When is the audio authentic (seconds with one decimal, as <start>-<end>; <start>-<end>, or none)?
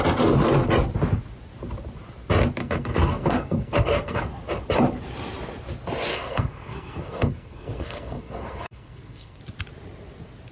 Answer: 0.0-2.6; 4.3-6.1; 9.4-10.5